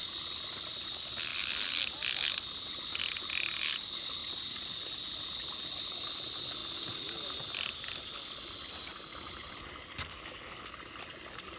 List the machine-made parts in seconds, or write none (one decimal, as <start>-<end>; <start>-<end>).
10.1-10.7